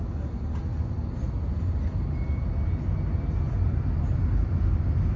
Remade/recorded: recorded